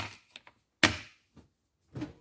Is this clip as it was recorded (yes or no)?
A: yes